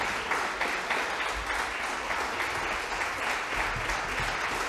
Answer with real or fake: real